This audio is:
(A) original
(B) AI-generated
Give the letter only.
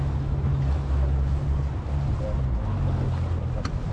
A